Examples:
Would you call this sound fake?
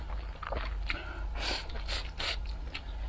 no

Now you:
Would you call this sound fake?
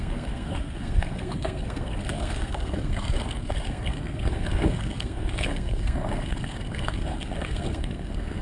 yes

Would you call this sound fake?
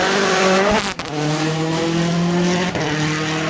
no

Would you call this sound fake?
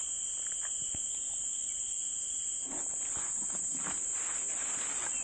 no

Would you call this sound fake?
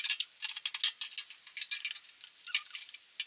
no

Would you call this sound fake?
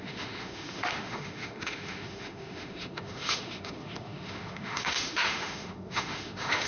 yes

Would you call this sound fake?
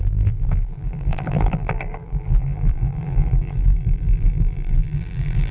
yes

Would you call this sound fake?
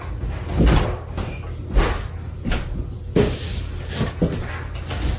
no